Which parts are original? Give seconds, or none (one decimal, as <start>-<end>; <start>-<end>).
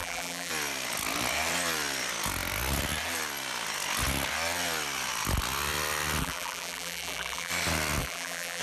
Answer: 0.5-6.2; 7.5-8.0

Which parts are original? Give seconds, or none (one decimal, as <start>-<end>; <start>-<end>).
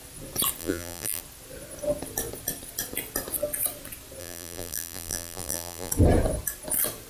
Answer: 0.0-0.6; 1.2-4.2; 5.9-7.1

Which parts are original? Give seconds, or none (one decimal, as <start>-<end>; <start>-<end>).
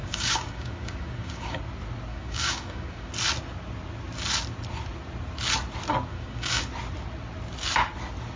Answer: 1.6-2.1; 3.1-6.1; 6.7-8.4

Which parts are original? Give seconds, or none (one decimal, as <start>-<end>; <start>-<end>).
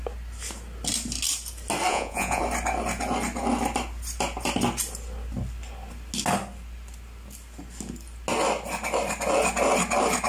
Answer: 0.0-1.9; 2.4-10.3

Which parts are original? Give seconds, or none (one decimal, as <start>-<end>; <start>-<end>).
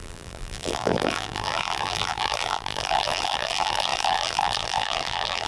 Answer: none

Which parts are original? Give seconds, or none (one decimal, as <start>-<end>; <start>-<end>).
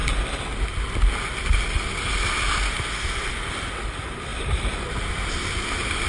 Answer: 0.0-6.1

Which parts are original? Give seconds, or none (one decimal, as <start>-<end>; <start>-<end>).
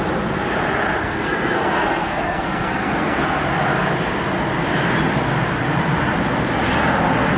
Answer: 0.0-1.0; 3.2-7.4